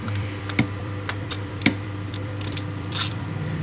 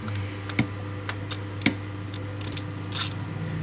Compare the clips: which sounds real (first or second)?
second